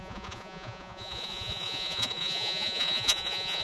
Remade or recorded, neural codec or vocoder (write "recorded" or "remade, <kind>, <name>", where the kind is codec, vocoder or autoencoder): remade, vocoder, Vocos